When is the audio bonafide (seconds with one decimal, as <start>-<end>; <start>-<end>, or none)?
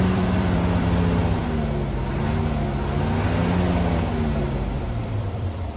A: 1.4-4.5